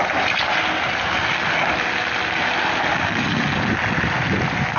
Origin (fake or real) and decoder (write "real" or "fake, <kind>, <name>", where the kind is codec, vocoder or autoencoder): real